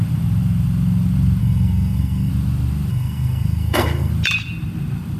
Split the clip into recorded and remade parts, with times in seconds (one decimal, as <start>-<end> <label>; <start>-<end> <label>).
0.0-1.4 recorded; 1.4-2.3 remade; 2.3-2.9 recorded; 2.9-4.1 remade; 4.1-5.2 recorded

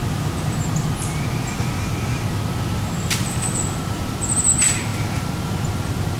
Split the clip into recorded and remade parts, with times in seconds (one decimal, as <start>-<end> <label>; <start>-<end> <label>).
0.0-6.2 recorded

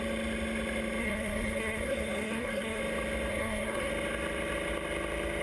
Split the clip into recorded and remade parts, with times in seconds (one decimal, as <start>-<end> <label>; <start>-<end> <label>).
0.0-1.0 recorded; 1.0-2.8 remade; 2.8-3.3 recorded; 3.3-3.9 remade; 3.9-5.4 recorded

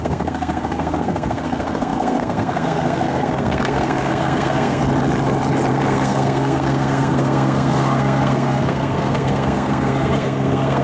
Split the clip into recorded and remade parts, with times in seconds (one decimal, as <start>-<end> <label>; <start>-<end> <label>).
0.0-4.8 remade; 4.8-5.7 recorded; 5.7-10.8 remade

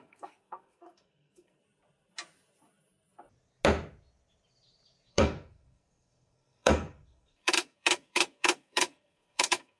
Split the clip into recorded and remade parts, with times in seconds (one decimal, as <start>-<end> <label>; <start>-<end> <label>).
0.0-1.6 remade; 1.6-5.1 recorded; 5.1-9.8 remade

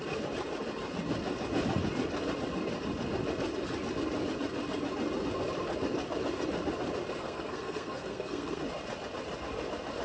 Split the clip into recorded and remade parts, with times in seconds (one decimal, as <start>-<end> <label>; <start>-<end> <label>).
0.0-7.2 recorded; 7.2-8.6 remade; 8.6-10.0 recorded

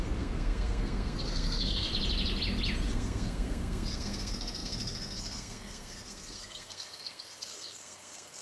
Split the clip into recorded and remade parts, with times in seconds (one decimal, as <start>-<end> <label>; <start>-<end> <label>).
0.0-1.9 remade; 1.9-2.9 recorded; 2.9-8.4 remade

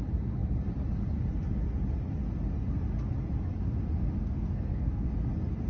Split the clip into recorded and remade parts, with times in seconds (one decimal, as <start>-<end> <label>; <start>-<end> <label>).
0.0-4.2 recorded; 4.2-5.1 remade; 5.1-5.7 recorded